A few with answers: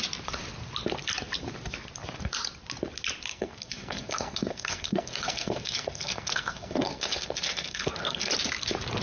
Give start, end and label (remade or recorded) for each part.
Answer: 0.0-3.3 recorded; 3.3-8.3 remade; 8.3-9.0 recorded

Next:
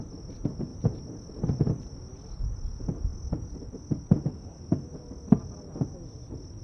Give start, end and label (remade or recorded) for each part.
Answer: 0.0-3.1 recorded; 3.1-3.6 remade; 3.6-6.6 recorded

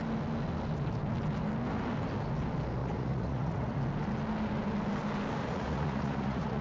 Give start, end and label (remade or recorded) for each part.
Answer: 0.0-2.8 recorded; 2.8-3.8 remade; 3.8-5.4 recorded; 5.4-6.6 remade

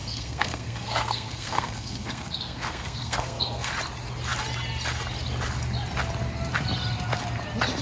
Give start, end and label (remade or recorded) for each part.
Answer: 0.0-3.7 remade; 3.7-7.8 recorded

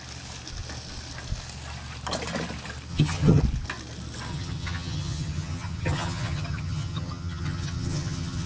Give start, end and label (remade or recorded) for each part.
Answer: 0.0-2.9 recorded; 2.9-3.4 remade; 3.4-4.3 recorded; 4.3-8.5 remade

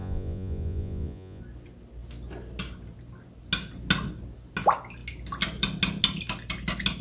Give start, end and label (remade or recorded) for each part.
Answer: 0.0-1.4 remade; 1.4-7.0 recorded

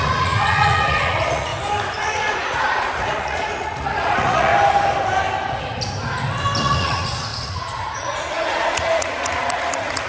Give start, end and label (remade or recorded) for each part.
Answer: 0.0-1.5 remade; 1.5-2.0 recorded; 2.0-4.5 remade; 4.5-6.6 recorded; 6.6-10.1 remade

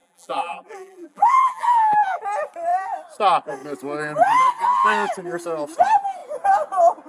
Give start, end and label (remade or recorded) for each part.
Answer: 0.0-2.2 remade; 2.2-7.1 recorded